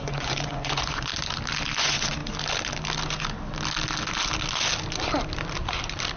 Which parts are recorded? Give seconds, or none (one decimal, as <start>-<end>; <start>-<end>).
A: 1.1-1.8; 2.2-6.2